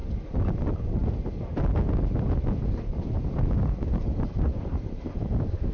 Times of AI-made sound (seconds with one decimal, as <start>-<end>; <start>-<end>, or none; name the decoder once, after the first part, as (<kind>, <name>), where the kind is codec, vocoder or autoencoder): 3.0-5.7 (vocoder, BigVGAN v2)